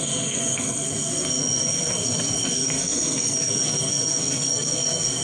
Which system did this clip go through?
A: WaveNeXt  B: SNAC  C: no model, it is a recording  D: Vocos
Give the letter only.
B